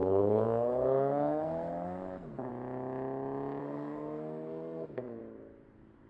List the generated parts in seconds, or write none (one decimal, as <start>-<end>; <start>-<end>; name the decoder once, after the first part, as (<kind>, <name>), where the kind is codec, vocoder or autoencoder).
0.0-2.5 (codec, SNAC); 3.6-5.2